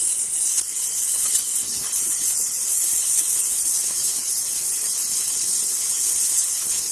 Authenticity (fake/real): fake